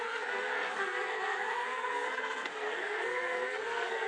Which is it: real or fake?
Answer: fake